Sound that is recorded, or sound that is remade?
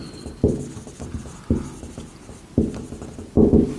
recorded